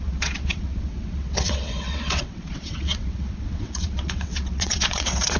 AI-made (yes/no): yes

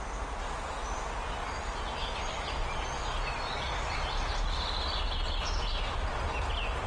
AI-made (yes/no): no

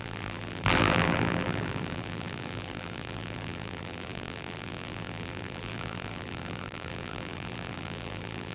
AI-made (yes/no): yes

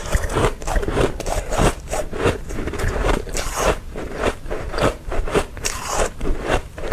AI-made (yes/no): yes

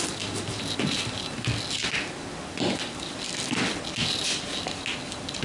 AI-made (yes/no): no